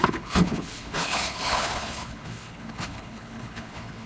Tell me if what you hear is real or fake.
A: fake